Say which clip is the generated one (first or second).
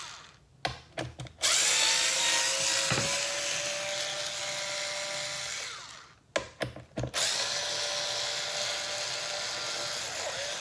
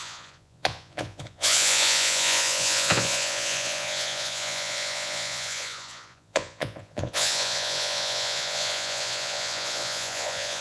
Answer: second